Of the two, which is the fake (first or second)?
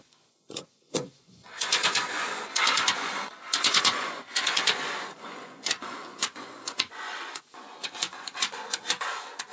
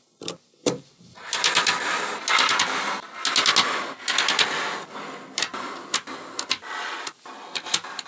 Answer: first